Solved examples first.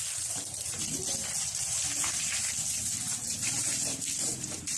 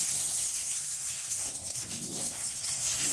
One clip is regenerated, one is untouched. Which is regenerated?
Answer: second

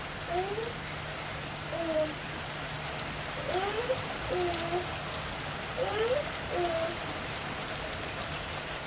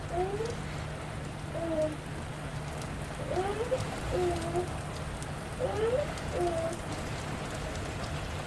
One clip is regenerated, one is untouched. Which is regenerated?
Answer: first